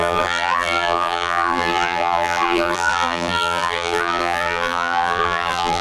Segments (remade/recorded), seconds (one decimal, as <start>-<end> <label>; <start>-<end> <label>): 0.0-5.8 remade